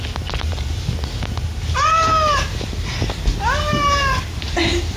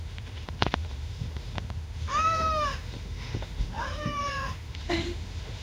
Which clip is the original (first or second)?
first